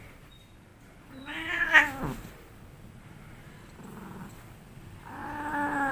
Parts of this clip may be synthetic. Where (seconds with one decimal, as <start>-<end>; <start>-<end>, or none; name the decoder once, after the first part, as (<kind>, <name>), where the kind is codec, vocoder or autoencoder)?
0.0-0.7 (vocoder, BigVGAN v2); 4.2-5.2